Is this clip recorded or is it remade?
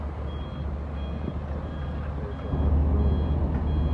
recorded